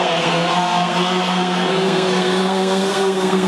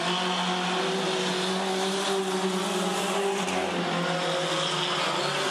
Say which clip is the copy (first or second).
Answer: first